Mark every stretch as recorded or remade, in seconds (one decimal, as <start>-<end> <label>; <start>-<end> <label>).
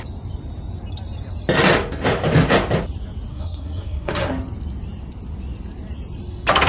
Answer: 0.0-3.3 recorded; 3.3-4.3 remade; 4.3-6.7 recorded